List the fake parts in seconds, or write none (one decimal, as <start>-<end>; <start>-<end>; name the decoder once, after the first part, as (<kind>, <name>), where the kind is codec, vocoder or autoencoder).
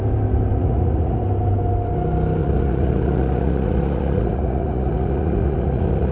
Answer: 0.6-1.2 (vocoder, Vocos); 2.4-6.1